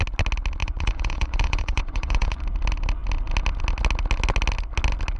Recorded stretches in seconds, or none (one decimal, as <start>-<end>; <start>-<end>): 0.0-0.6; 2.4-5.2